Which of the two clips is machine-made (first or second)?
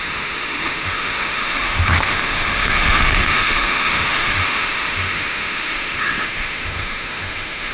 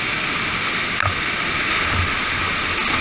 first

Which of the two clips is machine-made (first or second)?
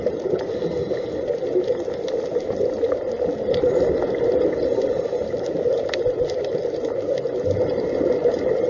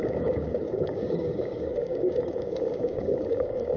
second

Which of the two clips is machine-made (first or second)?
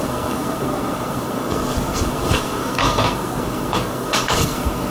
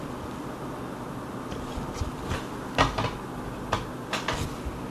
first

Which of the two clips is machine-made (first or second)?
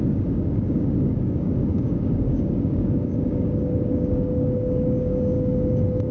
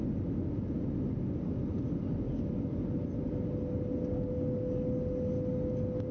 first